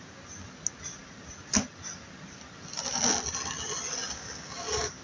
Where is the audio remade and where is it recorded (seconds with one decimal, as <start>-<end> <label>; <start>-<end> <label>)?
0.0-5.0 recorded